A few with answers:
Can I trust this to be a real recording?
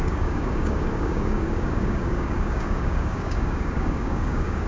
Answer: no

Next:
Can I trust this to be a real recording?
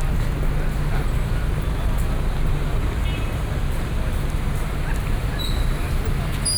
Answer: yes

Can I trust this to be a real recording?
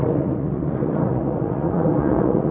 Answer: no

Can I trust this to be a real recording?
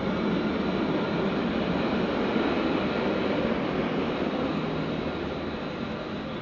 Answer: yes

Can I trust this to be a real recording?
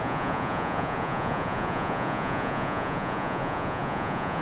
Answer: no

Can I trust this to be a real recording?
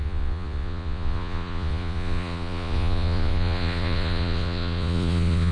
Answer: no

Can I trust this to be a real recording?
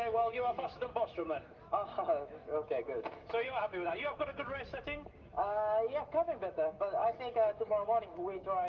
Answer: no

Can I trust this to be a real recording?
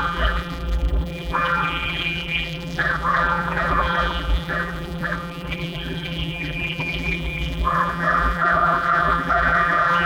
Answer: no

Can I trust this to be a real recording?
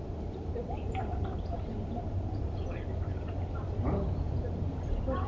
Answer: no